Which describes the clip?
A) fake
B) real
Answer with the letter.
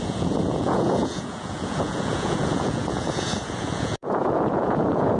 A